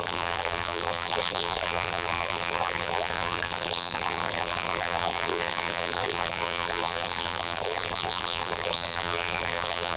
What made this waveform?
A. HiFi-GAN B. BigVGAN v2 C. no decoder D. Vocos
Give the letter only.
B